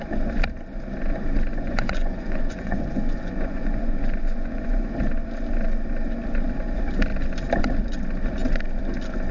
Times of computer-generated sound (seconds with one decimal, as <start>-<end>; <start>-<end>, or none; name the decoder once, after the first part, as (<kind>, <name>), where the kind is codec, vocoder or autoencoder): 1.5-4.9 (vocoder, Vocos)

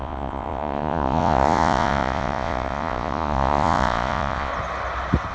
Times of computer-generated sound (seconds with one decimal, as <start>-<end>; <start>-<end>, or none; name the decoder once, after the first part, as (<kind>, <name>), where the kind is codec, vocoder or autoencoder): 0.0-4.5 (vocoder, Vocos)

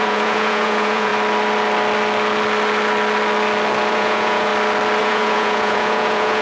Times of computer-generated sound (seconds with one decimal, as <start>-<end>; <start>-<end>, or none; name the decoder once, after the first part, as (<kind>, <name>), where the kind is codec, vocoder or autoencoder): 0.0-1.1 (vocoder, Vocos); 3.9-4.5; 5.0-6.4

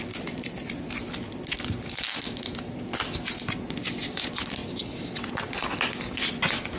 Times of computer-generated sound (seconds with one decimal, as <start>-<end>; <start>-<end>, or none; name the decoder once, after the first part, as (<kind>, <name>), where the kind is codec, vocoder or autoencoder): none